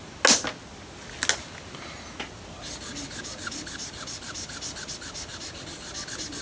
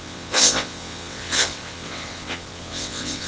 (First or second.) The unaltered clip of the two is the first